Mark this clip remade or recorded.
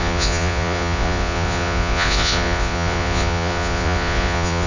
remade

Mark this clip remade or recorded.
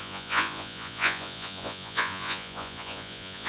remade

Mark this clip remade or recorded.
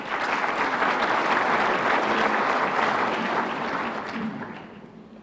recorded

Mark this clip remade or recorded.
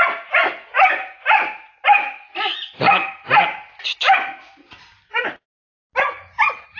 recorded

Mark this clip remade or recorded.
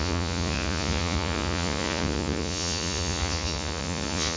remade